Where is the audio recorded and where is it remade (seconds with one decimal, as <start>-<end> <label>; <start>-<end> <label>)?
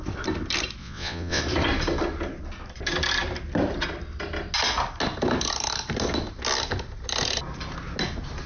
0.0-0.8 recorded; 0.8-1.4 remade; 1.4-8.5 recorded